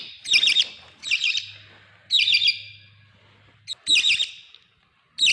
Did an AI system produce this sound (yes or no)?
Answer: no